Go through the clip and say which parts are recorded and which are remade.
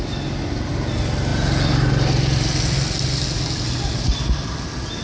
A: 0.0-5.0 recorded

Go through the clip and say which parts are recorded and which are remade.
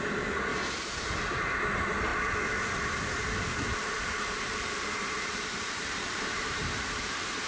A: 0.0-0.5 recorded; 0.5-1.1 remade; 1.1-3.7 recorded; 3.7-7.1 remade; 7.1-7.5 recorded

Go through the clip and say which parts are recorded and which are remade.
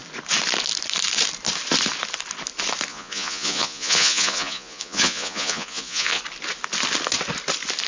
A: 0.0-2.9 recorded; 2.9-6.2 remade; 6.2-7.9 recorded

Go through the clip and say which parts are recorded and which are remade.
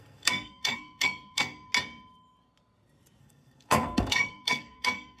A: 0.0-1.7 remade; 1.7-3.2 recorded; 3.2-5.2 remade